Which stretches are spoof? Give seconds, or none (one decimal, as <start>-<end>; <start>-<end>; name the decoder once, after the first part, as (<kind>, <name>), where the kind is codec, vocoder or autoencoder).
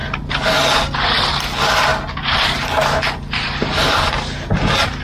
none